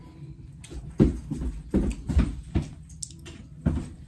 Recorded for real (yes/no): yes